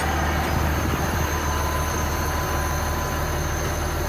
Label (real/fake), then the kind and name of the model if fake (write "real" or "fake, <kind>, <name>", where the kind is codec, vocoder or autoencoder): real